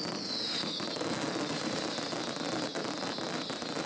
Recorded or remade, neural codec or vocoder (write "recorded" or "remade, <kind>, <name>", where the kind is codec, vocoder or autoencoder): recorded